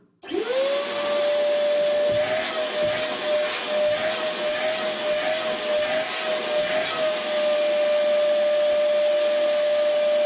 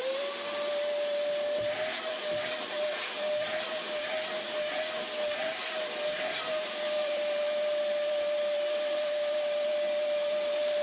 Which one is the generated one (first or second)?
second